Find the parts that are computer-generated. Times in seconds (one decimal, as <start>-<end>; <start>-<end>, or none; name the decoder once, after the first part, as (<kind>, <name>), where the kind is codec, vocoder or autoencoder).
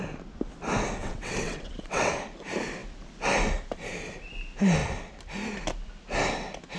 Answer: 1.0-2.1 (vocoder, WaveNeXt)